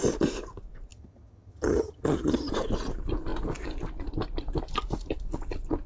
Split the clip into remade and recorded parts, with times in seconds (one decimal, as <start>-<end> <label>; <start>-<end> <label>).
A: 0.0-0.9 recorded; 0.9-2.5 remade; 2.5-5.9 recorded